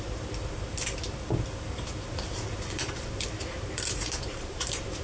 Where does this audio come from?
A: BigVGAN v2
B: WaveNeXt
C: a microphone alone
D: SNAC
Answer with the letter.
A